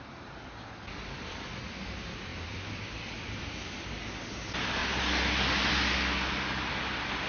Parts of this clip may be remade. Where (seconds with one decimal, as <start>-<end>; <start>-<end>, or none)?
2.3-4.1